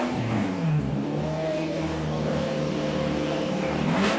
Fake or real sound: fake